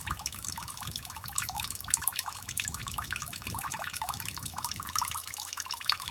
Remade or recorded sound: remade